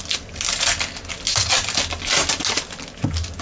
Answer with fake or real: real